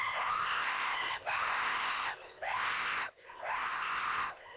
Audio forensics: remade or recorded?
remade